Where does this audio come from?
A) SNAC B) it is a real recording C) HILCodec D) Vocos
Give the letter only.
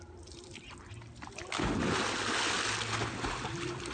B